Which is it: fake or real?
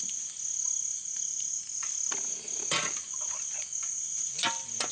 real